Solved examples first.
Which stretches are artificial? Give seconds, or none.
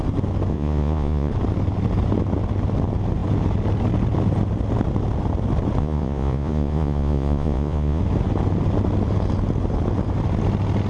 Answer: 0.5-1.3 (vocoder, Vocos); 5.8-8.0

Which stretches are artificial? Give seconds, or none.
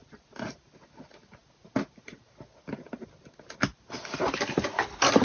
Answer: none